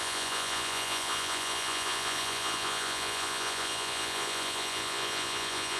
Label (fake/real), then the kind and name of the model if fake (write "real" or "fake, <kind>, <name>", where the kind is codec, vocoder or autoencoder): fake, vocoder, Vocos